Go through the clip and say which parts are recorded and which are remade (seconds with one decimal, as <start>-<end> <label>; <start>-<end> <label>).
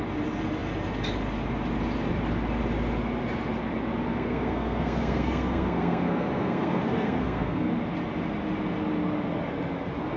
0.0-4.1 recorded; 4.1-7.7 remade; 7.7-10.2 recorded